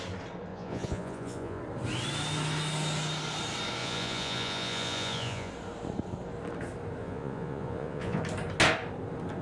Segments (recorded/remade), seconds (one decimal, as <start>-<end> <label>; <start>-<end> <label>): 0.0-0.5 recorded; 0.5-1.6 remade; 1.6-3.8 recorded; 3.8-5.5 remade; 5.5-7.0 recorded; 7.0-8.2 remade; 8.2-9.4 recorded